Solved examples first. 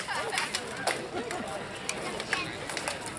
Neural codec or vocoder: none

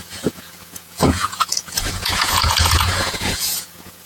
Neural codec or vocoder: vocoder, Vocos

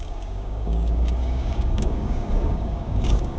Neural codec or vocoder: codec, DAC